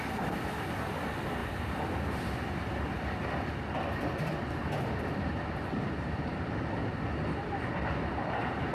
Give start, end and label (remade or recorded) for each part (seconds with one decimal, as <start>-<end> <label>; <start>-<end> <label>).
0.0-8.7 recorded